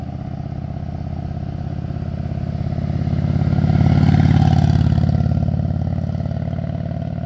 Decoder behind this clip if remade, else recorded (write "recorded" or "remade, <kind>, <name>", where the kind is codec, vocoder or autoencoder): recorded